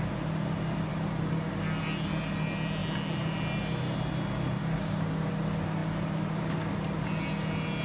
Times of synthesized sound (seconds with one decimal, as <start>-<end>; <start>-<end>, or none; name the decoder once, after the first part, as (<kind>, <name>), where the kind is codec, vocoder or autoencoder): 0.9-1.5 (codec, DAC); 4.6-5.3